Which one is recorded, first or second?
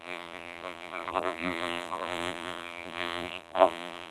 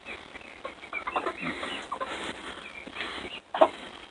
second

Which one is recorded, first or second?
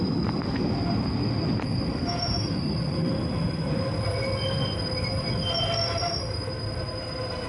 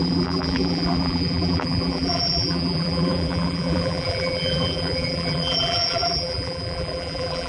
first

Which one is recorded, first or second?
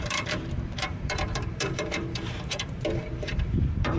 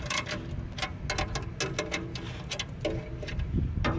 second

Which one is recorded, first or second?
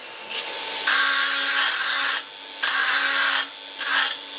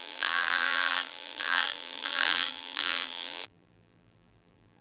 first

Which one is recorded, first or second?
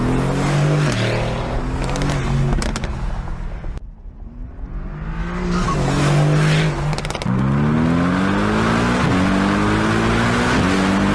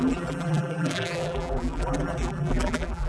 first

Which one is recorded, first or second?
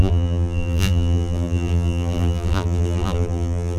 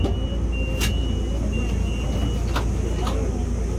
second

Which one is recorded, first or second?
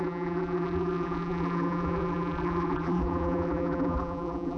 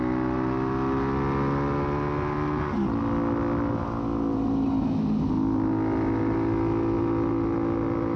second